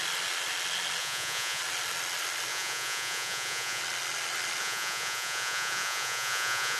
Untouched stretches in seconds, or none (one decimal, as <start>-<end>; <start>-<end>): 0.0-1.0; 1.6-2.5; 3.8-4.6